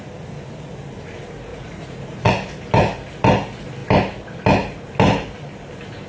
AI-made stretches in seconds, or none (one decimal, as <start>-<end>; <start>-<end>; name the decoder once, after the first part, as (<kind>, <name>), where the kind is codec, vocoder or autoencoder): 1.5-2.3 (vocoder, Vocos)